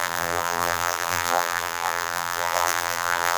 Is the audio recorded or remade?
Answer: remade